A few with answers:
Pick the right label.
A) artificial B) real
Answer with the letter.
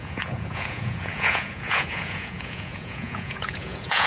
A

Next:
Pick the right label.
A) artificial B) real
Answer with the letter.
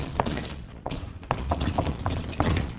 A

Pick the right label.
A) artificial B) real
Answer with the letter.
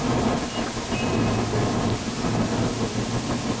B